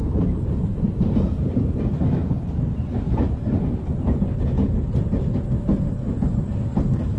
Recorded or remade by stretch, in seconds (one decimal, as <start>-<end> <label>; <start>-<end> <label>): 0.0-7.2 recorded